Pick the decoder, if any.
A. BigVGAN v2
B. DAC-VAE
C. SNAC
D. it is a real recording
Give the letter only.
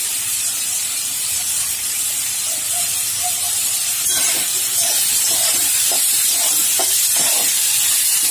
A